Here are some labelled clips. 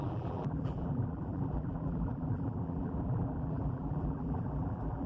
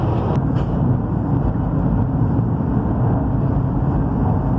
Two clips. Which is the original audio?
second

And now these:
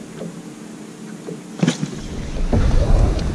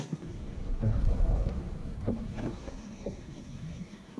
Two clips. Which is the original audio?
first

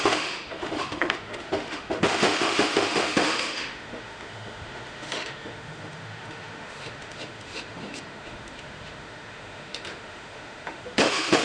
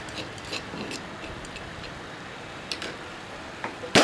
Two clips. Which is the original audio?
second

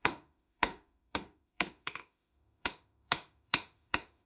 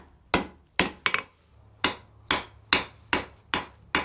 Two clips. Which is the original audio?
second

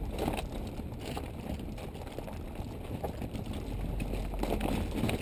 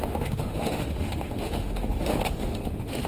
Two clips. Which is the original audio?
first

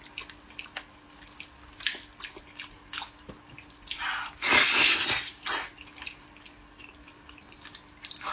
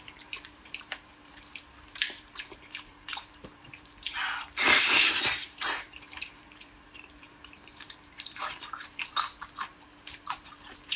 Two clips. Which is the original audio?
first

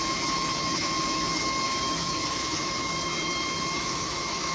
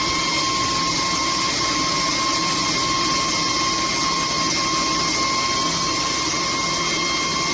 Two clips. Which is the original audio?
second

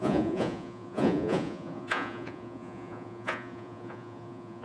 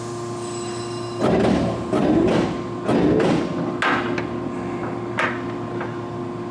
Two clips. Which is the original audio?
second